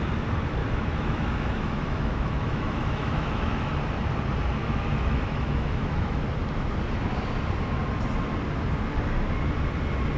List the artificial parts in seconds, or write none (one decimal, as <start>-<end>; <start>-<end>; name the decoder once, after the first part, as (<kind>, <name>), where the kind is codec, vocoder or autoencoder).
0.6-3.7 (autoencoder, DAC-VAE); 4.6-6.2